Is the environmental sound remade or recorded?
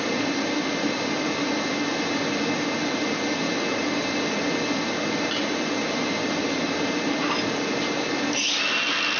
recorded